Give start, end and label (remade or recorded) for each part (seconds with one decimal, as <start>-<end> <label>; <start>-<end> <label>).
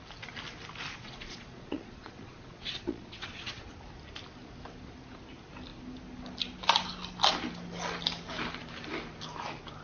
0.0-0.9 recorded; 0.9-3.8 remade; 3.8-9.8 recorded